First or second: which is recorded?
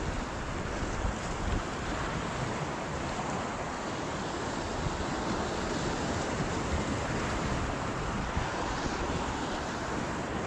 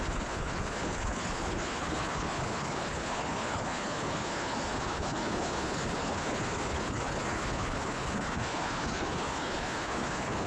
first